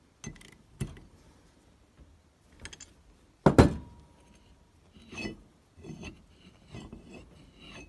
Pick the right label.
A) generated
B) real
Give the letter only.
B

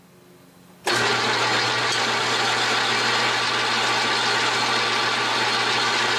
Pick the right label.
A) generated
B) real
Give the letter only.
B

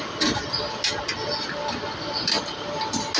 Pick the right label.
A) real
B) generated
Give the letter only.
A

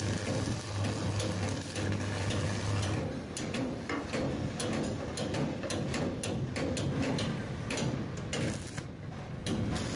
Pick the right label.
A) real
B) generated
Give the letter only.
A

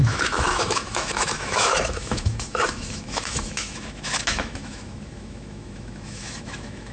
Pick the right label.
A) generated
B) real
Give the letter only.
A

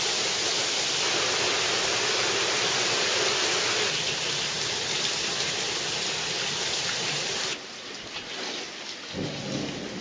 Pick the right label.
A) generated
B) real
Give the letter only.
B